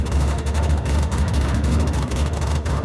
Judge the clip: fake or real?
fake